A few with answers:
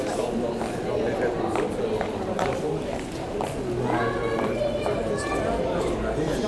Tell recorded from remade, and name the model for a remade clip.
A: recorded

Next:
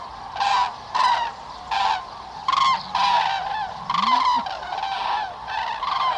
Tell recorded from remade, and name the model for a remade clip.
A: recorded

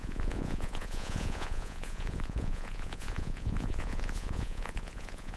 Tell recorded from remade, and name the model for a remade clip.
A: remade, vocoder, Vocos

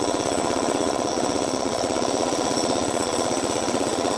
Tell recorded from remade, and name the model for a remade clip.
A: remade, vocoder, Vocos